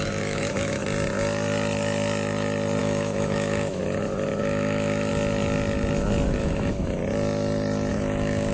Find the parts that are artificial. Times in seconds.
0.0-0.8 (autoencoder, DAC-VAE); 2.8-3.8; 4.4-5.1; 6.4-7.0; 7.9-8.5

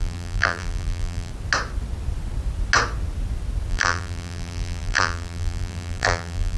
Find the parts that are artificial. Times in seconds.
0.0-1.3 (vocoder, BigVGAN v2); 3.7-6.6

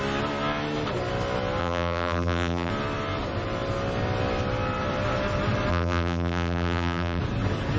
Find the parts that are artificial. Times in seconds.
1.6-2.7 (vocoder, BigVGAN v2); 5.7-7.2

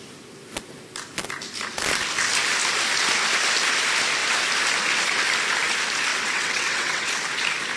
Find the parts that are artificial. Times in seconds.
6.1-7.1 (vocoder, WaveNeXt)